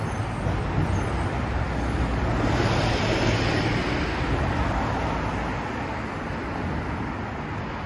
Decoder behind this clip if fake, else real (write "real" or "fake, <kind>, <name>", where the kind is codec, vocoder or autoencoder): real